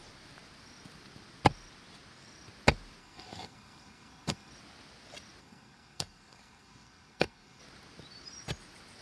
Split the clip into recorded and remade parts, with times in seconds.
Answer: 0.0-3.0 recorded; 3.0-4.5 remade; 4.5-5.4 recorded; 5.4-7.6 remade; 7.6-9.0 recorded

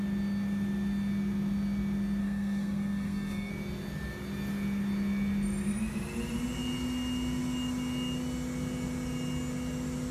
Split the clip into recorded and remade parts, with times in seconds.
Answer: 0.0-2.2 recorded; 2.2-3.5 remade; 3.5-10.1 recorded

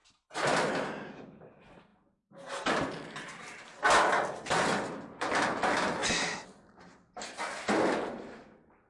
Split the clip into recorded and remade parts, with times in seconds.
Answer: 0.0-1.2 recorded; 1.2-1.9 remade; 1.9-4.5 recorded; 4.5-6.0 remade; 6.0-7.9 recorded; 7.9-8.9 remade

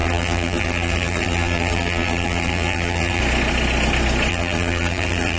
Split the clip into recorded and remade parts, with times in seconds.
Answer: 0.0-3.2 remade; 3.2-4.3 recorded; 4.3-5.4 remade

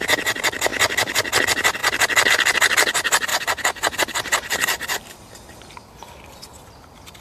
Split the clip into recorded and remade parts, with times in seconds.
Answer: 0.0-7.2 recorded

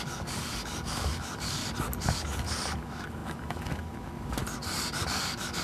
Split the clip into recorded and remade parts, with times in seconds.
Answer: 0.0-1.6 remade; 1.6-2.1 recorded; 2.1-4.4 remade; 4.4-5.0 recorded; 5.0-5.6 remade